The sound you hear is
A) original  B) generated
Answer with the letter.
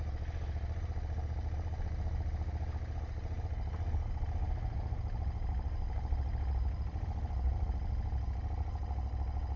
A